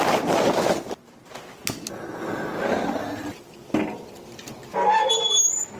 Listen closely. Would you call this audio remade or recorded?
recorded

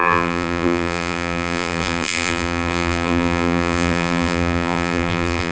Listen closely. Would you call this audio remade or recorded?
remade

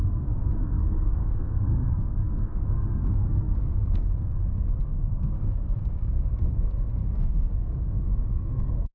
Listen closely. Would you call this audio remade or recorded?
remade